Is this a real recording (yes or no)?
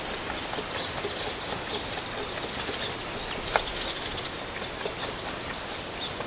yes